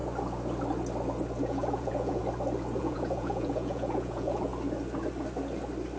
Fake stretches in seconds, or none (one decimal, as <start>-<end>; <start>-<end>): 1.4-2.2; 2.8-4.5